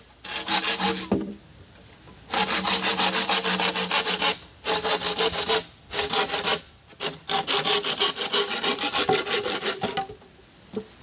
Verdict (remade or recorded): recorded